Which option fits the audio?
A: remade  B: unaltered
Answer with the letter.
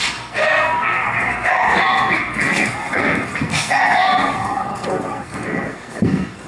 A